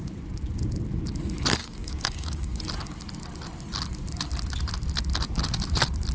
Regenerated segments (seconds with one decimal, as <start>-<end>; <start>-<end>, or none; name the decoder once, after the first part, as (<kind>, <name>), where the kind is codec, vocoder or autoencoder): 1.6-2.6 (codec, DAC)